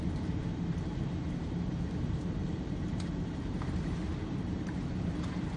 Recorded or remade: remade